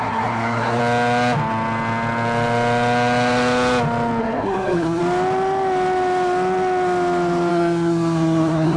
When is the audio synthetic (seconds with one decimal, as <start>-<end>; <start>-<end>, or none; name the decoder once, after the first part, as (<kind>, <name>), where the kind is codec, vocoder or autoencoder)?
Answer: 0.0-0.8 (codec, SNAC); 4.2-5.0; 7.5-8.8